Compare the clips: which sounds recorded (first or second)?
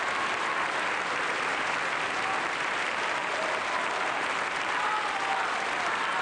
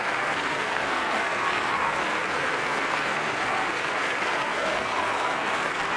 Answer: first